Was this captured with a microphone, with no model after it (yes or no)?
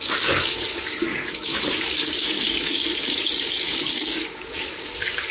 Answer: no